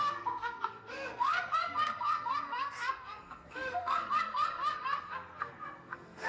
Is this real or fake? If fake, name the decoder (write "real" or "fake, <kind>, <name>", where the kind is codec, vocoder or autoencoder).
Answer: fake, codec, SNAC